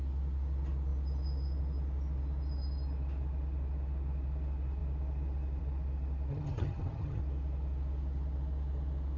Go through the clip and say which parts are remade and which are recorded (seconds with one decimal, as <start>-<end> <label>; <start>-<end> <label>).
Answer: 0.0-6.3 recorded; 6.3-7.2 remade; 7.2-9.2 recorded